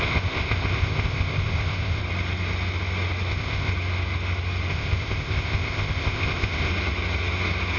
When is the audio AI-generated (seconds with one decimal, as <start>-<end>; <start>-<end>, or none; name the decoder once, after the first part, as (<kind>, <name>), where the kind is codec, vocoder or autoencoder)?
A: 0.0-2.0 (codec, ZipCodec); 3.3-3.7; 4.7-6.7